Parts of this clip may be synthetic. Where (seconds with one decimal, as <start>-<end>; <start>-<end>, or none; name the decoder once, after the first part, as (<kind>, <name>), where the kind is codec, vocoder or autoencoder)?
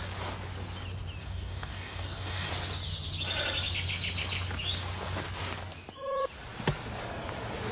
1.2-2.5 (codec, DAC)